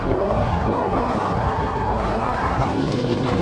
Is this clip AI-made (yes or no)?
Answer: yes